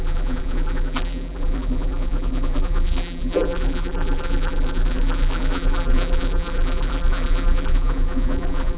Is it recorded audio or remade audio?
remade